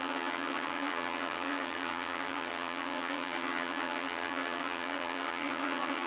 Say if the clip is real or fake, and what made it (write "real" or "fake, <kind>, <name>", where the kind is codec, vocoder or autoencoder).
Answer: fake, vocoder, HiFi-GAN